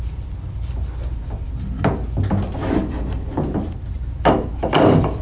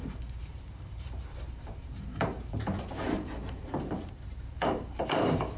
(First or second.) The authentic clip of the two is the first